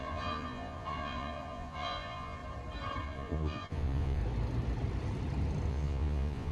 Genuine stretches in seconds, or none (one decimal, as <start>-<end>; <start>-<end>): 2.4-3.0; 4.2-5.7